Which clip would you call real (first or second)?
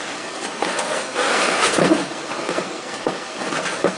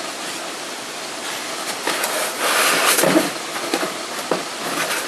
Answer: second